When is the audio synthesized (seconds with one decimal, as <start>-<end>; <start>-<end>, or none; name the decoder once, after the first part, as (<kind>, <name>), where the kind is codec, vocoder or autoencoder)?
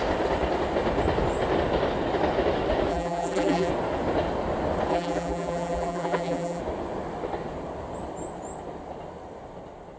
2.9-3.7 (vocoder, BigVGAN v2); 4.9-6.6